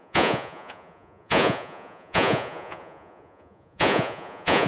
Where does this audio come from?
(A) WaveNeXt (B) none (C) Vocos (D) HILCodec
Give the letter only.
C